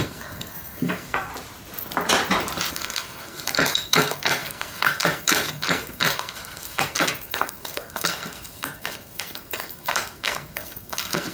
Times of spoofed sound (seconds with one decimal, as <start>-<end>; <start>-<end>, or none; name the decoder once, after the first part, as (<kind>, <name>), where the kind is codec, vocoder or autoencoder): 0.0-1.3 (codec, SNAC); 2.7-11.3

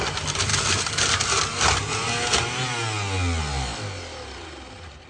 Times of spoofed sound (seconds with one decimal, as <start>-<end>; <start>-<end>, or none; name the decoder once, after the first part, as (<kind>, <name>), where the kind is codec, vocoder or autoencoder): none

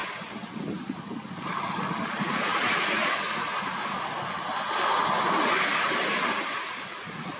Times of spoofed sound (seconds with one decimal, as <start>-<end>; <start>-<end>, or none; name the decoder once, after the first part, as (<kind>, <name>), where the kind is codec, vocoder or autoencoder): 2.4-3.8 (vocoder, Vocos); 6.5-7.4

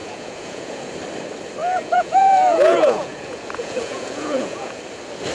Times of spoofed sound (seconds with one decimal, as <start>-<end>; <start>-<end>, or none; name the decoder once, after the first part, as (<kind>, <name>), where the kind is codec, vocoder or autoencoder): 0.0-0.9 (vocoder, Vocos); 1.6-4.8

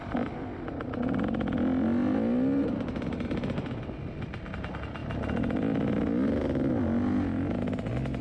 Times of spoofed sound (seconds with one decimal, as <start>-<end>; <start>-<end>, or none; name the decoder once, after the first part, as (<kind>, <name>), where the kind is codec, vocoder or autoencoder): none

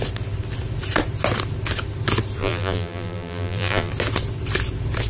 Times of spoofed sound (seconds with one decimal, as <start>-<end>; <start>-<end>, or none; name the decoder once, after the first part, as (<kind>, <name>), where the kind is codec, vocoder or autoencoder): 2.4-3.9 (vocoder, BigVGAN v2)